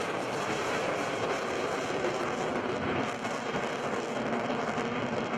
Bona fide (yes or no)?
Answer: no